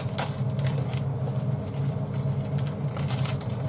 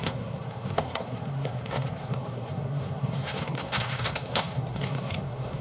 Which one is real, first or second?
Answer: first